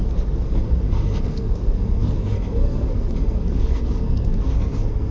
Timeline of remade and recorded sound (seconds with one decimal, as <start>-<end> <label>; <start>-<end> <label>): 0.0-5.1 remade